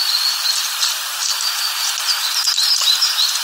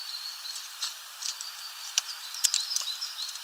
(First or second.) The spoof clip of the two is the second